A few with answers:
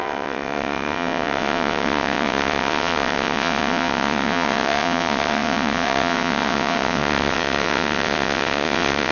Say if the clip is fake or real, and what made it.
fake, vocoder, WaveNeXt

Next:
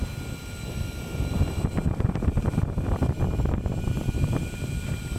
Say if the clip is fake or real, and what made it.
fake, vocoder, BigVGAN v2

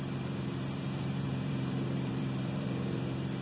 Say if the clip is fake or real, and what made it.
fake, vocoder, BigVGAN v2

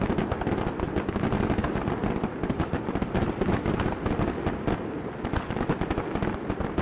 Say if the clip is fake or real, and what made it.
real